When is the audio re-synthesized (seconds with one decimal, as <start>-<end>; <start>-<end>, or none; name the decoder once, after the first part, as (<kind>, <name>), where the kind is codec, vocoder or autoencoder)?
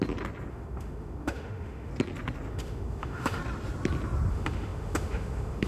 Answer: 0.5-1.9 (autoencoder, DAC-VAE); 2.5-3.4; 4.3-5.7